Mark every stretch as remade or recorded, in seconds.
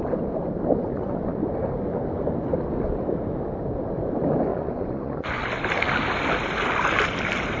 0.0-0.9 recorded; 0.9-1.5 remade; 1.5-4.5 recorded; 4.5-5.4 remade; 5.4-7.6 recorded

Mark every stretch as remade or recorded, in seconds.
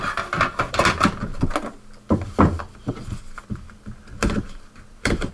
0.0-1.3 remade; 1.3-2.9 recorded; 2.9-5.3 remade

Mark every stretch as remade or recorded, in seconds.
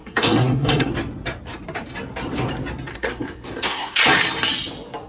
0.0-0.9 remade; 0.9-2.9 recorded; 2.9-4.0 remade; 4.0-5.1 recorded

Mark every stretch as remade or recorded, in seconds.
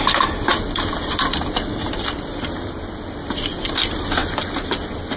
0.0-5.2 remade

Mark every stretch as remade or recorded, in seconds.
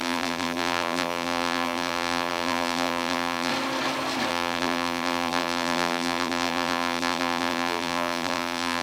0.0-3.5 remade; 3.5-4.3 recorded; 4.3-8.8 remade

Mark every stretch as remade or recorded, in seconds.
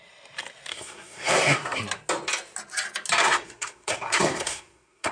0.0-0.7 recorded; 0.7-1.8 remade; 1.8-3.2 recorded; 3.2-5.1 remade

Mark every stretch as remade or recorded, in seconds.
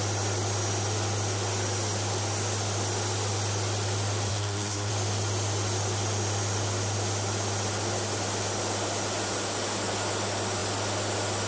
0.0-4.3 recorded; 4.3-4.9 remade; 4.9-11.5 recorded